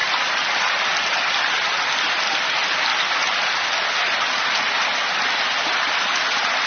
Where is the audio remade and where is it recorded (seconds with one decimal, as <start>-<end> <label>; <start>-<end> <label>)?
0.0-6.7 recorded